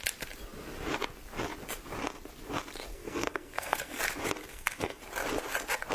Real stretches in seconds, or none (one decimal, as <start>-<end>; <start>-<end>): 0.0-2.9; 4.0-4.5; 5.0-5.9